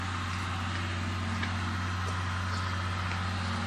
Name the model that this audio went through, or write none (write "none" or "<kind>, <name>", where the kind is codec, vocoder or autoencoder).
none